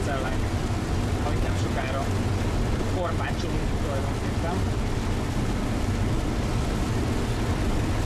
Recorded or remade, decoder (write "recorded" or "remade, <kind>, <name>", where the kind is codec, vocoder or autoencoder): recorded